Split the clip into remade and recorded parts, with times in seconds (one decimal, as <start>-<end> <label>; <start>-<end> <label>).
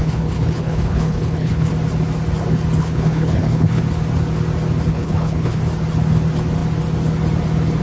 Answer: 0.0-1.7 remade; 1.7-2.8 recorded; 2.8-3.8 remade; 3.8-4.9 recorded; 4.9-5.6 remade; 5.6-7.8 recorded